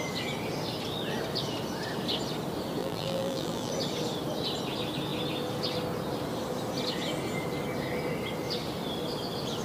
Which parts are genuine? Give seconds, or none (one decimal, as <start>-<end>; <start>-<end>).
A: 0.0-2.8; 3.7-9.6